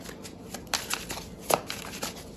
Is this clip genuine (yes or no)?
yes